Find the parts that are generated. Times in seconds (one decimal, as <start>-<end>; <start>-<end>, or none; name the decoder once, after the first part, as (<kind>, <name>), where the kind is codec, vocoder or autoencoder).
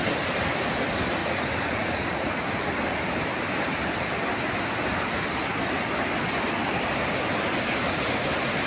1.2-2.5 (vocoder, Vocos)